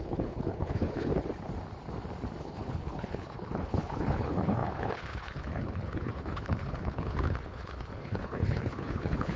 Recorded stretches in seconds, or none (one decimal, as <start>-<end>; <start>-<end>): 1.1-2.4